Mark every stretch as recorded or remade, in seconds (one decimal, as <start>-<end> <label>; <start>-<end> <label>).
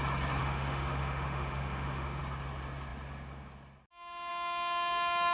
0.0-0.4 recorded; 0.4-2.2 remade; 2.2-5.3 recorded